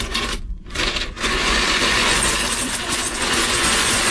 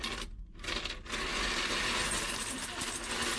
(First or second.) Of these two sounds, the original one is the second